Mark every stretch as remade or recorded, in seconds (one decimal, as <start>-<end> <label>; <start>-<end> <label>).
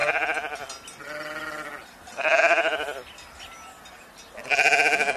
0.0-5.2 recorded